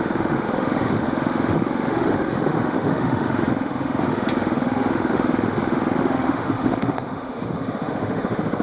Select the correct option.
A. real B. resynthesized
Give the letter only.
B